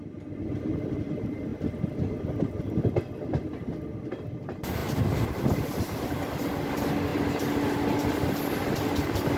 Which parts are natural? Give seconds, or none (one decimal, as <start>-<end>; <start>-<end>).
0.0-9.4